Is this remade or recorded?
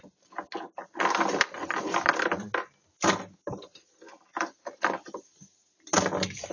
recorded